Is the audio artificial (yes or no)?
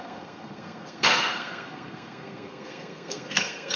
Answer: yes